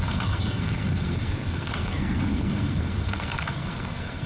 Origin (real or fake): fake